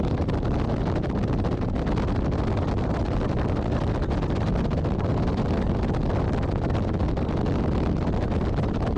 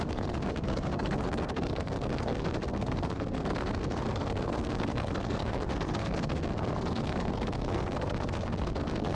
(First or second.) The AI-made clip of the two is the second